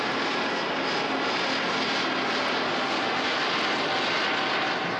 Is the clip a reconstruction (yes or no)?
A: no